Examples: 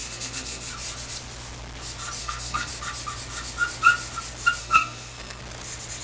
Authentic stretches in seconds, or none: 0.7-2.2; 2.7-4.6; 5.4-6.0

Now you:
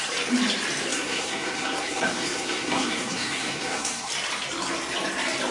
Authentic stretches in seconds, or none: 0.0-0.9; 4.1-5.5

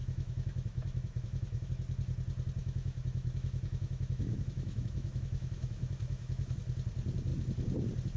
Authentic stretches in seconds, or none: 1.7-2.6; 6.6-8.2

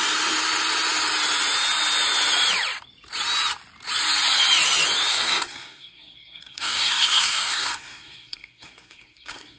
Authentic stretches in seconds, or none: 0.0-5.1

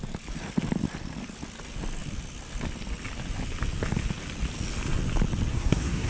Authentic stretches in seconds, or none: 0.0-5.5